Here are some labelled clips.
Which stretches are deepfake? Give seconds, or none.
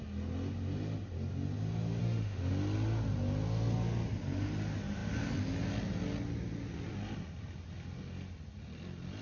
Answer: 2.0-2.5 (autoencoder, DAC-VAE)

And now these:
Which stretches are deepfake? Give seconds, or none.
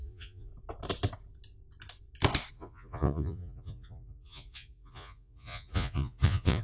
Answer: 0.0-0.5 (vocoder, Vocos); 2.5-6.6